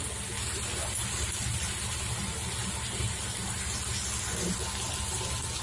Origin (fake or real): real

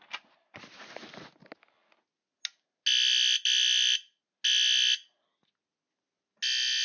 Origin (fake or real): real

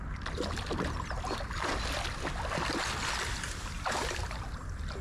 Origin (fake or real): real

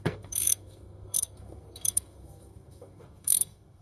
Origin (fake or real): fake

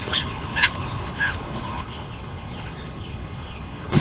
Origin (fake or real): fake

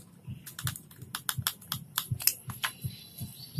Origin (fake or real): real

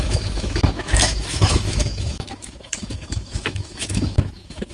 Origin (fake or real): fake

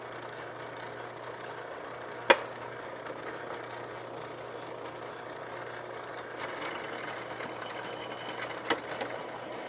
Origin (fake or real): real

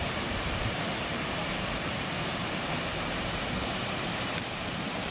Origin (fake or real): fake